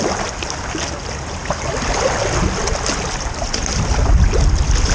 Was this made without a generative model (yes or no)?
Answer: yes